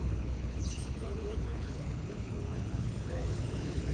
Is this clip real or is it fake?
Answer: fake